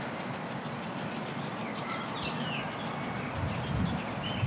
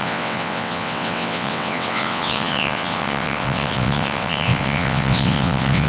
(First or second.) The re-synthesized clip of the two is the second